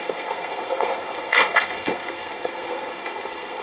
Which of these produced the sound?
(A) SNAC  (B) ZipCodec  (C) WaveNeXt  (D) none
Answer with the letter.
A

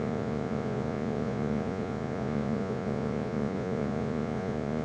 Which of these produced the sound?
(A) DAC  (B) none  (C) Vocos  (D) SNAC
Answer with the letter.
C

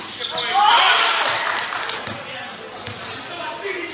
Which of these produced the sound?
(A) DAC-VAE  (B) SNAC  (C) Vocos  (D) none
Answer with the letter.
D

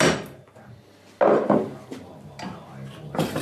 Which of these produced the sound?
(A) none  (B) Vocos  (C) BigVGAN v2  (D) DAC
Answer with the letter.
A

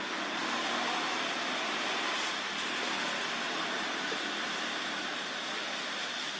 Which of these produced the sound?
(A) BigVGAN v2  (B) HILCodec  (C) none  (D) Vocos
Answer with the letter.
C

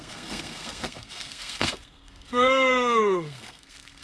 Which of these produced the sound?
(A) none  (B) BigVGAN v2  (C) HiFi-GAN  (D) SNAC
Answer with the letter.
D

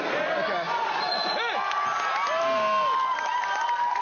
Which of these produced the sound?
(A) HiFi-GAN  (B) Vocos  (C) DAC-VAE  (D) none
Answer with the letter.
D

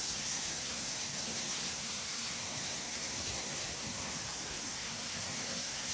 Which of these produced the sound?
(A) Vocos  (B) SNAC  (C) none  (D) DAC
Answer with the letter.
B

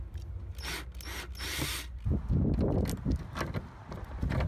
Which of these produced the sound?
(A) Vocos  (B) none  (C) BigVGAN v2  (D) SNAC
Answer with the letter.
B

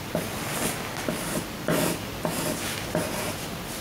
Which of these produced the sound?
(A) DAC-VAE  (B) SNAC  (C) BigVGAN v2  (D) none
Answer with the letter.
C